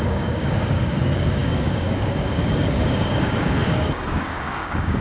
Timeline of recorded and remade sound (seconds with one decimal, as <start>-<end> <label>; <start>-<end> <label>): 0.0-5.0 remade